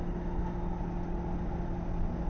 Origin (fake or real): real